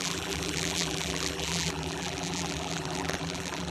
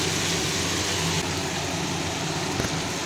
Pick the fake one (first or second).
first